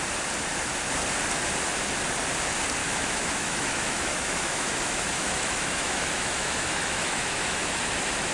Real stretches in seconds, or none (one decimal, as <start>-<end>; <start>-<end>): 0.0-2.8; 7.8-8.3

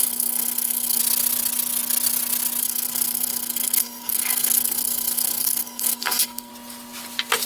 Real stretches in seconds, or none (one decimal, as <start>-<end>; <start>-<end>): 1.0-2.6; 6.5-7.5

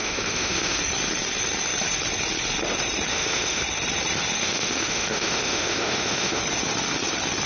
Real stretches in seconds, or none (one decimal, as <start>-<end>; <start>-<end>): 0.8-3.1; 3.6-4.4; 6.4-7.5